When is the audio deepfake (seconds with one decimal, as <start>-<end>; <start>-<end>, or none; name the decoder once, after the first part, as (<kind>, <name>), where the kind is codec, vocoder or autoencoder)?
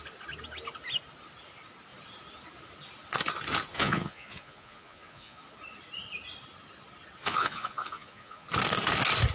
3.7-5.4 (vocoder, Vocos); 7.2-8.5